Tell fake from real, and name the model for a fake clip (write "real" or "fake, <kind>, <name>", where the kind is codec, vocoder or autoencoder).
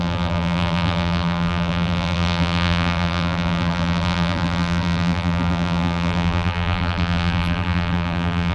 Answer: fake, vocoder, BigVGAN v2